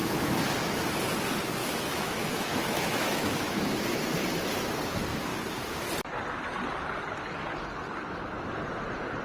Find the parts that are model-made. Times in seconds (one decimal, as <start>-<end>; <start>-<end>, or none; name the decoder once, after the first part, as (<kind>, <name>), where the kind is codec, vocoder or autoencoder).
0.0-0.5 (autoencoder, DAC-VAE); 1.6-3.8